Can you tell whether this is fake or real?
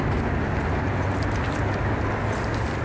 real